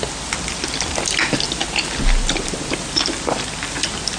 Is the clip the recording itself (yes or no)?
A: yes